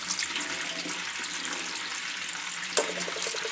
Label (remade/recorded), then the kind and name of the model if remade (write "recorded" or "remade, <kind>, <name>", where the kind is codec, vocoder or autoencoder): recorded